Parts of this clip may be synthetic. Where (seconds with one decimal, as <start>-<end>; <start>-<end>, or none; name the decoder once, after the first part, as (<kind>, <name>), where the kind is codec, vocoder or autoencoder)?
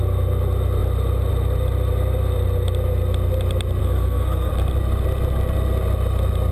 3.8-4.5 (codec, SNAC)